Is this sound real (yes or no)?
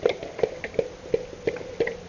yes